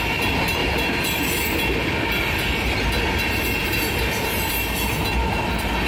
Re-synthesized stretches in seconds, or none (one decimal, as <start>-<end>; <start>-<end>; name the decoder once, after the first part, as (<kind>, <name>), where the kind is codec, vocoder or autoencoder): none